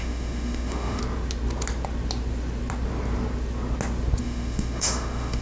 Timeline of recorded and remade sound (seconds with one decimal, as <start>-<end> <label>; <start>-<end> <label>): 0.0-1.0 remade; 1.0-4.2 recorded; 4.2-5.4 remade